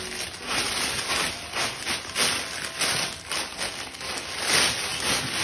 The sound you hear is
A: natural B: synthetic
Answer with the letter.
A